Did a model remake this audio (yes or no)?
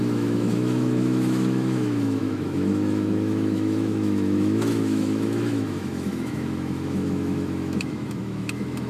yes